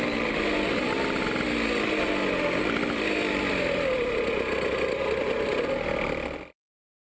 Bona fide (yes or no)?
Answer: yes